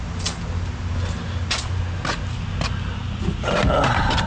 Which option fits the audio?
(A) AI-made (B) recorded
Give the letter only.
B